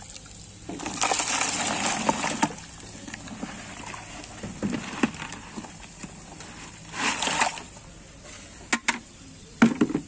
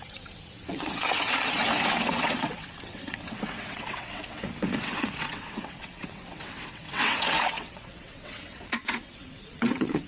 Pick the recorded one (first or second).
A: first